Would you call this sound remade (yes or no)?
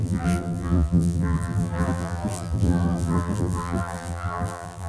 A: yes